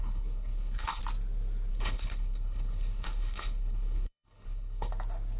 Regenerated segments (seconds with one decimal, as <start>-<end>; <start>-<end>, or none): 0.0-1.0; 1.7-4.9